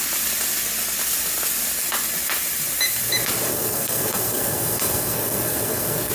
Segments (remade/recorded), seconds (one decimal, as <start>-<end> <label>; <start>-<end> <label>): 0.0-3.5 recorded; 3.5-6.1 remade